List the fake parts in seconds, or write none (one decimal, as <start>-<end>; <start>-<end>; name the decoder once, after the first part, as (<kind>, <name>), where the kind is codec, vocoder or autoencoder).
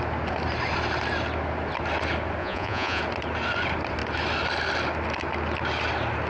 2.4-3.0 (vocoder, Vocos)